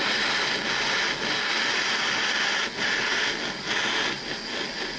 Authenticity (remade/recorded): recorded